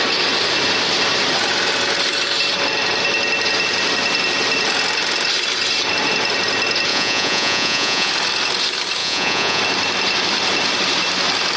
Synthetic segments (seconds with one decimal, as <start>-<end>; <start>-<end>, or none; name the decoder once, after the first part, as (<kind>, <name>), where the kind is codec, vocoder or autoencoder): 6.9-8.1 (vocoder, Vocos); 9.0-9.6